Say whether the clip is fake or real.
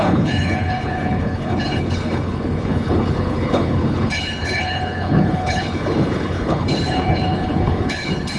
fake